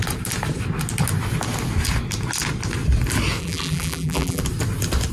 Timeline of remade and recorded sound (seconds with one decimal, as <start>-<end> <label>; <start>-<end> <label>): 0.0-3.4 recorded; 3.4-4.4 remade; 4.4-5.1 recorded